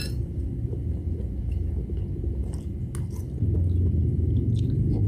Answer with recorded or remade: recorded